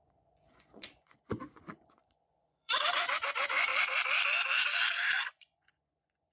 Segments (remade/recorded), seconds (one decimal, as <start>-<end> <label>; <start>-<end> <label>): 0.0-3.7 remade; 3.7-5.3 recorded; 5.3-6.3 remade